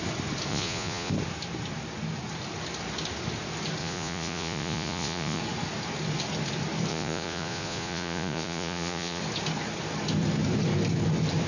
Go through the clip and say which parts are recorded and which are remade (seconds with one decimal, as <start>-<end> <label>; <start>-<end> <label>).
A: 0.0-0.5 recorded; 0.5-1.1 remade; 1.1-3.8 recorded; 3.8-5.4 remade; 5.4-6.9 recorded; 6.9-9.2 remade; 9.2-11.5 recorded